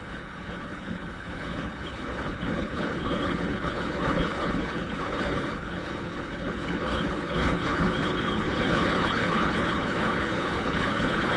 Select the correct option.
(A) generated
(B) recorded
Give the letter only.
A